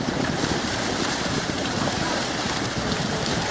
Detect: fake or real fake